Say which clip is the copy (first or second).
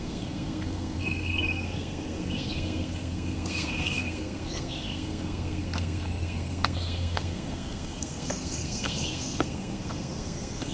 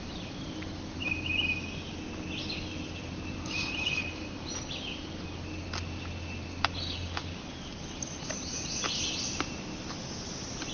first